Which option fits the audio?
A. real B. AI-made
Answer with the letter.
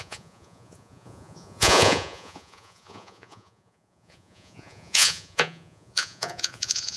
B